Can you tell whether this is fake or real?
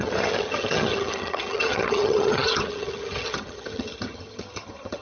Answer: fake